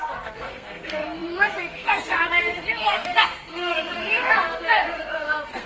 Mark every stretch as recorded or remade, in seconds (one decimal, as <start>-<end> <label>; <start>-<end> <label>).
0.0-5.7 remade